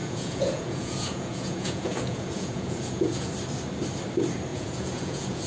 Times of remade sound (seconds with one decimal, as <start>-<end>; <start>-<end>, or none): 0.0-3.3; 4.5-5.5